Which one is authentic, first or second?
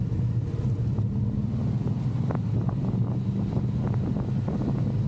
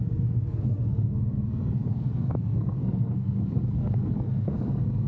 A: first